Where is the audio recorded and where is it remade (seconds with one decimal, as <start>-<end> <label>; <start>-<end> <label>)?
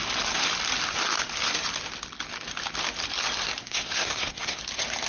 0.0-3.6 recorded; 3.6-4.6 remade; 4.6-5.1 recorded